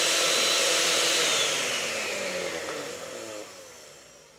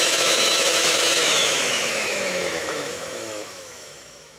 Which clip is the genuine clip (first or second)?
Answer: first